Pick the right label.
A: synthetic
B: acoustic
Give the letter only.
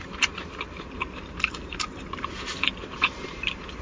A